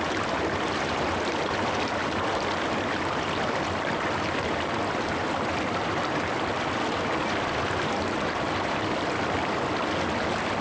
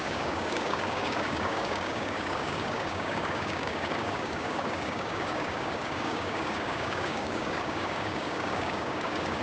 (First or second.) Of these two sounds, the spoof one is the second